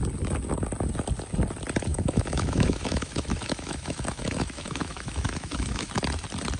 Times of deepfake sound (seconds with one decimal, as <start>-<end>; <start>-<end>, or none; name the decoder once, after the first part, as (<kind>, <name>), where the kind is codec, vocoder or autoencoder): 1.9-5.9 (autoencoder, DAC-VAE)